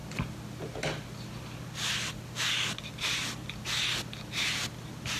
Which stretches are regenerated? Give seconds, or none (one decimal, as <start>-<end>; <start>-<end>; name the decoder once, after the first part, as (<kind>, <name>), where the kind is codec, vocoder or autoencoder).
none